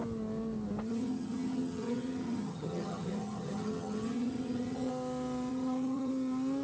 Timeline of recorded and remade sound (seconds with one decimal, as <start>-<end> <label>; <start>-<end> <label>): 0.0-0.9 recorded; 0.9-4.9 remade; 4.9-5.5 recorded; 5.5-6.1 remade; 6.1-6.6 recorded